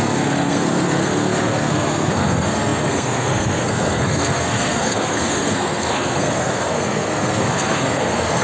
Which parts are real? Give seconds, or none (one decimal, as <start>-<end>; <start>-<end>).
none